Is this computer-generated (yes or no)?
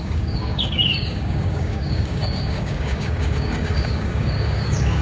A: yes